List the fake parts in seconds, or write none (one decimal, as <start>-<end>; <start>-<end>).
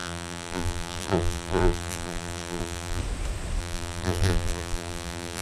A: 0.0-3.0; 3.6-5.4